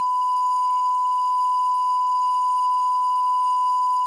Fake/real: fake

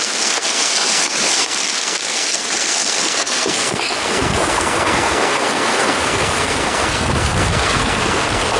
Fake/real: fake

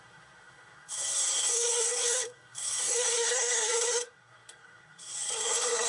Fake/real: fake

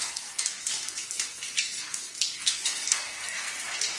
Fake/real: fake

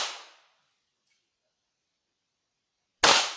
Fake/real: real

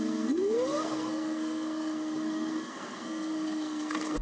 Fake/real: fake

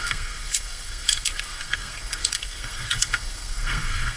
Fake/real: fake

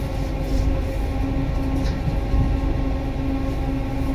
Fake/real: real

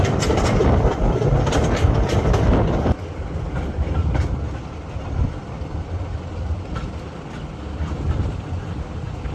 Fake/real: real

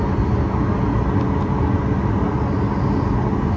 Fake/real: real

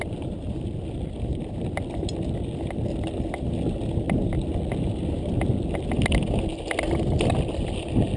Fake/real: real